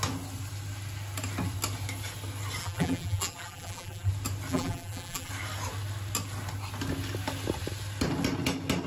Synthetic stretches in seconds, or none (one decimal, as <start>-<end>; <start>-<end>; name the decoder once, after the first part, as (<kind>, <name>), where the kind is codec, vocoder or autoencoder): 2.6-4.1 (vocoder, BigVGAN v2); 4.5-5.3